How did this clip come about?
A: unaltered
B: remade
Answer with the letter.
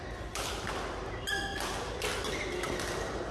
A